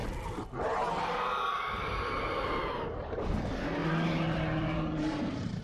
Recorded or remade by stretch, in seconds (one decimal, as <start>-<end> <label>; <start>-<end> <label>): 0.0-3.8 recorded; 3.8-5.6 remade